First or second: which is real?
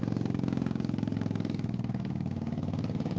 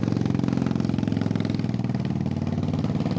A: second